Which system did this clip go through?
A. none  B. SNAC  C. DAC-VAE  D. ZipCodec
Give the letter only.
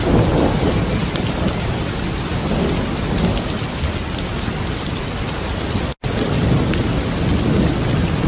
A